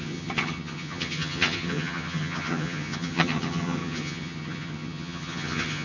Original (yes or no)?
no